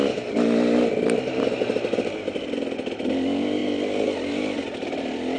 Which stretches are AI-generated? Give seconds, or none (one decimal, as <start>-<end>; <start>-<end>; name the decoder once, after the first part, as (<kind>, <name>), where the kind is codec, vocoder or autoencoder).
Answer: none